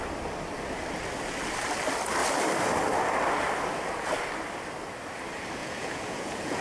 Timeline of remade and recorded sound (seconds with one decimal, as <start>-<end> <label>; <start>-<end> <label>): 0.0-5.6 recorded; 5.6-6.6 remade